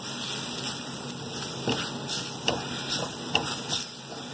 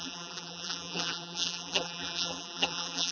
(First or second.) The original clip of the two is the first